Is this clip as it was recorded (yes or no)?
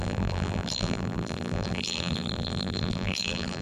no